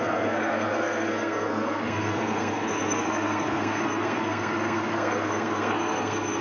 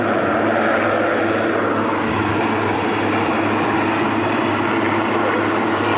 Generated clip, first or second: first